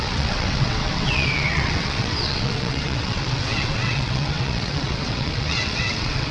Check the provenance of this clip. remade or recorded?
remade